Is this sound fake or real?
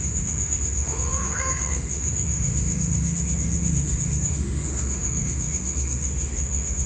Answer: fake